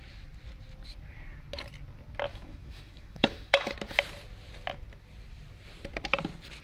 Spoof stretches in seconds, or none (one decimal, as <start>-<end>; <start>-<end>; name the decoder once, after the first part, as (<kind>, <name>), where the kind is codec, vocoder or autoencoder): 2.3-3.7 (autoencoder, DAC-VAE)